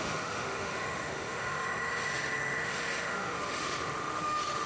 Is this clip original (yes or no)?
no